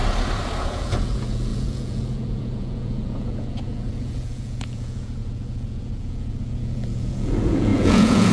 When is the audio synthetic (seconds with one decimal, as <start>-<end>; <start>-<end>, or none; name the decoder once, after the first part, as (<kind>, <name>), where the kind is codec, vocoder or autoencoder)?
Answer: 0.6-8.3 (vocoder, Vocos)